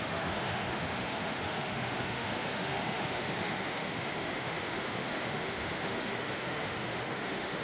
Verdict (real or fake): fake